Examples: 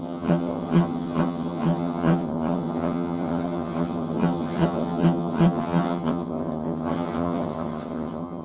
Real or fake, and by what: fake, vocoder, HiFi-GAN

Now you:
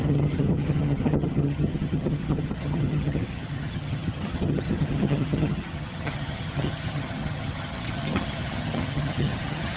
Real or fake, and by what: fake, vocoder, HiFi-GAN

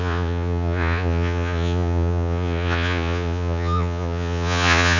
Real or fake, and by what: fake, vocoder, Vocos